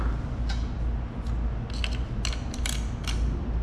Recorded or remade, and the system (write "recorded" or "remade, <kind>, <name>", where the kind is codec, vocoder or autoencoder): recorded